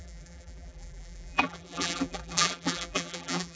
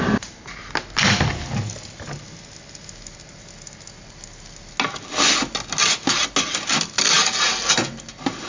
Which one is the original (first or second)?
second